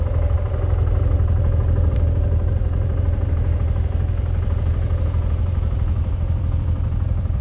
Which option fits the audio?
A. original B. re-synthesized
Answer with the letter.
A